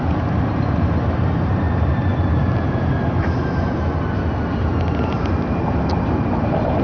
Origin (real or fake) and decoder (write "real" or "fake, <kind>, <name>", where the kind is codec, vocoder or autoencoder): real